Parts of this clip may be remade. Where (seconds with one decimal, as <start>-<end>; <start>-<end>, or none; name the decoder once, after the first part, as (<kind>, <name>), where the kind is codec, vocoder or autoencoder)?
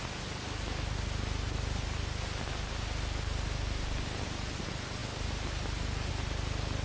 none